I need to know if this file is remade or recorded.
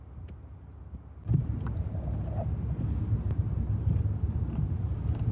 recorded